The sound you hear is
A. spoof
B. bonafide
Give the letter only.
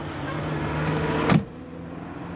B